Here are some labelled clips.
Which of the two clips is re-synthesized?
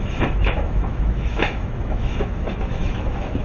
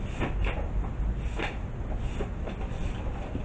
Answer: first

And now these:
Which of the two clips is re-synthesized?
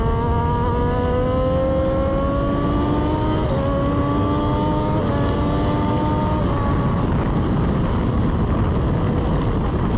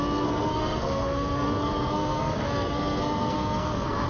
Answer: second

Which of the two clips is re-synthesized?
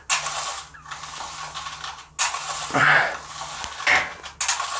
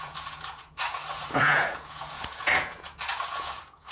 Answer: second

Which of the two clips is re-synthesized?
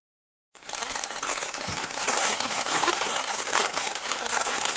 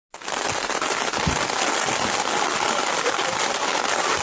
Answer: first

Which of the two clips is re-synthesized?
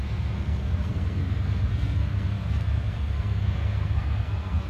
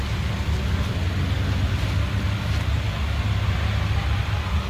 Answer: first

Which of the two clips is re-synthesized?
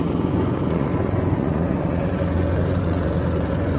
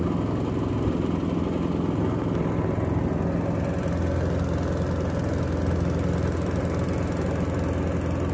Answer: first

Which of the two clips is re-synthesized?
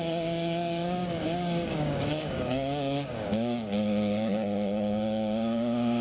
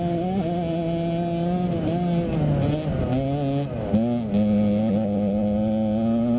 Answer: first